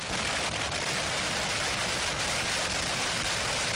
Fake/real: real